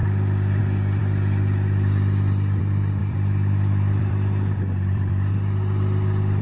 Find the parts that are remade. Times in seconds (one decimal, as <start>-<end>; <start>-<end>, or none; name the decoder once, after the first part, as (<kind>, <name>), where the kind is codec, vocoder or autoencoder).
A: 0.0-0.6 (vocoder, BigVGAN v2); 3.0-6.4